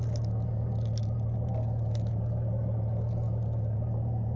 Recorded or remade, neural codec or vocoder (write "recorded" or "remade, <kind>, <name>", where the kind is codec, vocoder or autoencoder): recorded